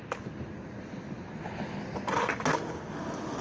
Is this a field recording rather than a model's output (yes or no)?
yes